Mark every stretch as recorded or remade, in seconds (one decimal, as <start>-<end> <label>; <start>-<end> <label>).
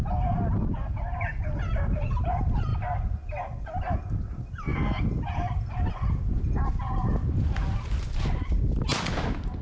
0.0-2.7 remade; 2.7-3.4 recorded; 3.4-4.7 remade; 4.7-9.6 recorded